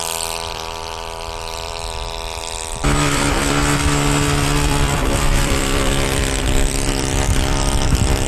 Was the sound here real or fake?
fake